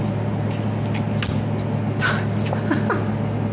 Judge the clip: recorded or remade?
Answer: recorded